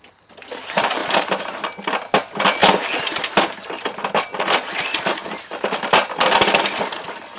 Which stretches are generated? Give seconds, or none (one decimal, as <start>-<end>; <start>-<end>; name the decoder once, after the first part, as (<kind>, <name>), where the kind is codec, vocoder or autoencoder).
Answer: 1.0-1.6 (vocoder, BigVGAN v2)